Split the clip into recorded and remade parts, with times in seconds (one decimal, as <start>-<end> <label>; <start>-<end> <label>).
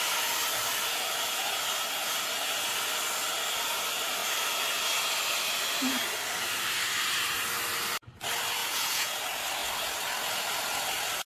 0.0-8.6 recorded; 8.6-9.2 remade; 9.2-11.2 recorded